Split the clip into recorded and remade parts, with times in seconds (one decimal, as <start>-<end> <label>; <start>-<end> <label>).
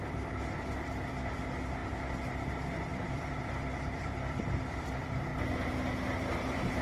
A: 0.0-5.3 remade; 5.3-6.2 recorded; 6.2-6.8 remade